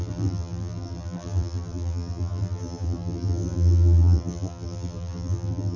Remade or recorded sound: remade